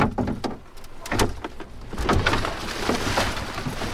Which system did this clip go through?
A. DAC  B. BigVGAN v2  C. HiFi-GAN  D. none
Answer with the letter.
D